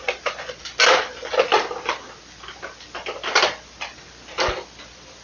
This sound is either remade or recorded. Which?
recorded